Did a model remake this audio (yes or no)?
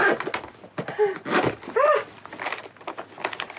no